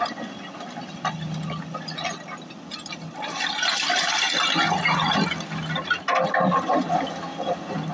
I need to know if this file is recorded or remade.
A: recorded